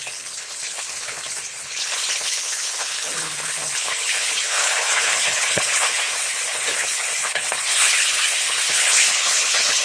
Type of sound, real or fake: fake